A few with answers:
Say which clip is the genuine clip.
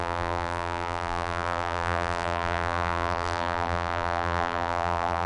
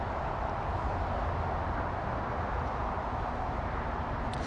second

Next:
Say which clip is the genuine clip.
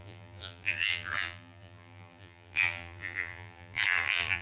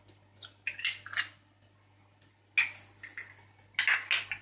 second